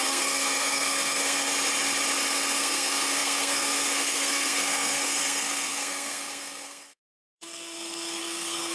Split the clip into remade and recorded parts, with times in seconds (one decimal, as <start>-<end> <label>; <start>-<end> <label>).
0.0-1.5 remade; 1.5-2.6 recorded; 2.6-8.7 remade